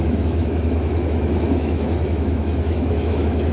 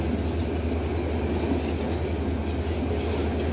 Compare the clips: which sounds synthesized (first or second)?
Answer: first